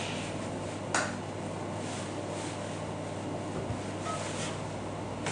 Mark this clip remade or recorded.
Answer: recorded